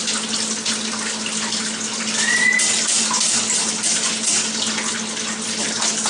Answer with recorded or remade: recorded